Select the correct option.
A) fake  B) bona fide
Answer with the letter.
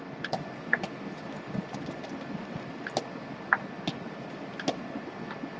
B